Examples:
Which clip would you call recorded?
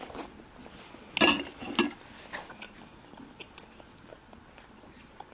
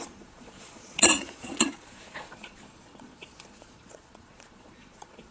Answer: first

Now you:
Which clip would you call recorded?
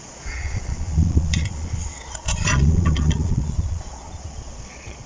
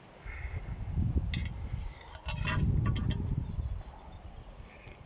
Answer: second